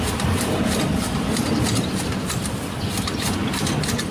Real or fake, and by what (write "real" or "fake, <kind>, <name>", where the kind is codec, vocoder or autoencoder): real